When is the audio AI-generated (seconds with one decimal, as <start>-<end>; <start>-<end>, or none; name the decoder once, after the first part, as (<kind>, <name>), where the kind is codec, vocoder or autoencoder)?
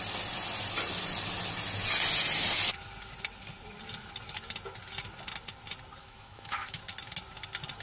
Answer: 6.0-6.8 (autoencoder, DAC-VAE)